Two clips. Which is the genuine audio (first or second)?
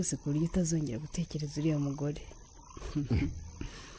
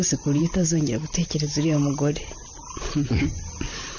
first